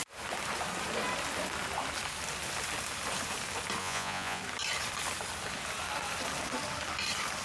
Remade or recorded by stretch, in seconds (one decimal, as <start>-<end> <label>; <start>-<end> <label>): 0.0-3.8 recorded; 3.8-4.4 remade; 4.4-7.4 recorded